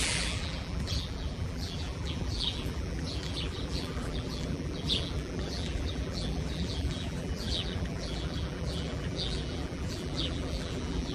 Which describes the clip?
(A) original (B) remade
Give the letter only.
B